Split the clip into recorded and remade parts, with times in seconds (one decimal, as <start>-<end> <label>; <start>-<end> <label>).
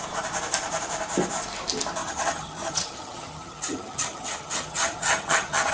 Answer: 0.0-2.0 recorded; 2.0-5.7 remade